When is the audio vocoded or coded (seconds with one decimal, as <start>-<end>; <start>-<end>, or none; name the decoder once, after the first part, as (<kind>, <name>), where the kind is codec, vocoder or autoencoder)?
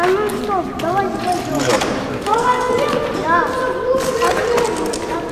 2.1-2.7 (codec, SNAC)